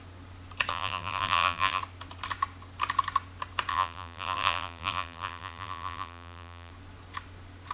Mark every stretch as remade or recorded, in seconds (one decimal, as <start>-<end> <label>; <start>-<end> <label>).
0.0-0.7 recorded; 0.7-1.8 remade; 1.8-3.7 recorded; 3.7-6.7 remade; 6.7-7.7 recorded